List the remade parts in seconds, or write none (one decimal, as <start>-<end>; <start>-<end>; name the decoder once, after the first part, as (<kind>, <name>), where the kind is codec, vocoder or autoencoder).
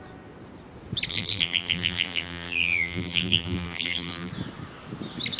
1.1-4.3 (vocoder, BigVGAN v2)